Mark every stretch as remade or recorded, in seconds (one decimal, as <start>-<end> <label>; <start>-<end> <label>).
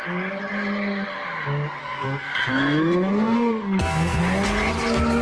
0.0-1.8 recorded; 1.8-4.2 remade; 4.2-5.2 recorded